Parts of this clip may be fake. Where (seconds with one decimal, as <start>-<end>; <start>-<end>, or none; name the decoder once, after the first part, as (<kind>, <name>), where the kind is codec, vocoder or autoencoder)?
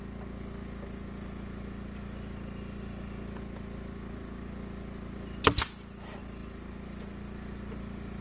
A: none